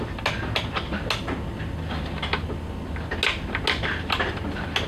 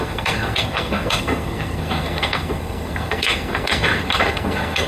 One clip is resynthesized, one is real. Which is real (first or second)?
first